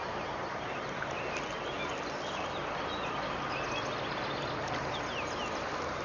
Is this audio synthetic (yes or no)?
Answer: no